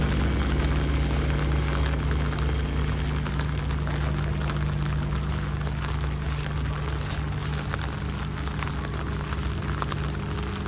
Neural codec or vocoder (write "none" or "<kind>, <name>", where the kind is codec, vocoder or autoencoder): none